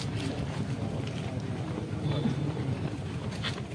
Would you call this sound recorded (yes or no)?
yes